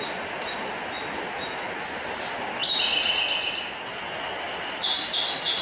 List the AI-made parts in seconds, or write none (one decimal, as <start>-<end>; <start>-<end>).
none